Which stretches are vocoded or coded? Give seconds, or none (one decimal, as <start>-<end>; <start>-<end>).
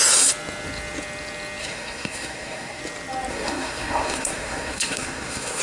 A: 1.6-2.8; 3.3-5.6